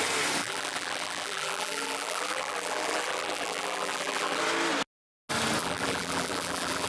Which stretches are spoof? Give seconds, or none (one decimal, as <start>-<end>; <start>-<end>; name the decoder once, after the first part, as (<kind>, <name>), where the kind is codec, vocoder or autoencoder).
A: 0.4-4.4 (vocoder, BigVGAN v2); 5.6-6.9